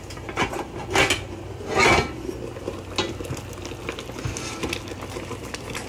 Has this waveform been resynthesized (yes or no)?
no